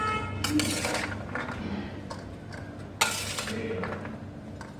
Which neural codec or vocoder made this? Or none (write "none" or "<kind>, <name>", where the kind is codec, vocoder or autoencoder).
none